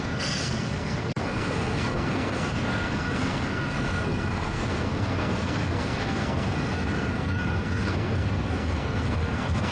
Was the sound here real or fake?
fake